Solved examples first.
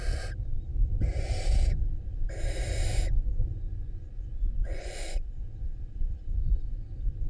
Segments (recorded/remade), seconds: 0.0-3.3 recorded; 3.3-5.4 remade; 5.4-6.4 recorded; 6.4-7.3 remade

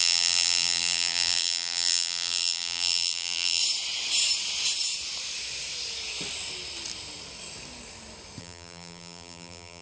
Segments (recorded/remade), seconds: 0.0-3.6 remade; 3.6-8.4 recorded; 8.4-9.8 remade

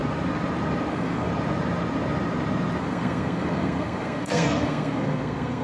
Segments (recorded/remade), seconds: 0.0-0.9 recorded; 0.9-1.3 remade; 1.3-2.8 recorded; 2.8-5.6 remade